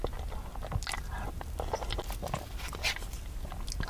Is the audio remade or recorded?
recorded